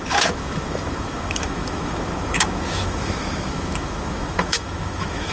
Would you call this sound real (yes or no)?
no